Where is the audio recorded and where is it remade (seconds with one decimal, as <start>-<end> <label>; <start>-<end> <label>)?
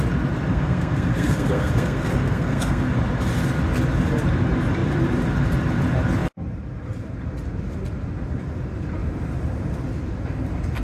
0.0-0.5 recorded; 0.5-2.8 remade; 2.8-10.8 recorded